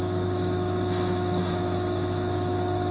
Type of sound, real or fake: fake